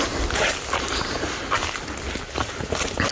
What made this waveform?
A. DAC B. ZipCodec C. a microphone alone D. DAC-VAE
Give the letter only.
C